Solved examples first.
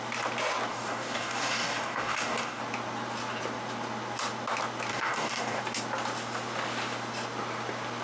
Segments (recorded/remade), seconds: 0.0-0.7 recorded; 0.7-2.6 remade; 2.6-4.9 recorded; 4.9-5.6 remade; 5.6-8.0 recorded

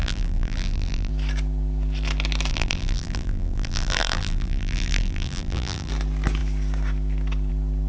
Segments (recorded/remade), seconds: 0.0-1.1 remade; 1.1-2.5 recorded; 2.5-5.9 remade; 5.9-7.9 recorded